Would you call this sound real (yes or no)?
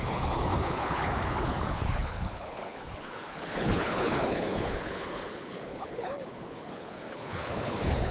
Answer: no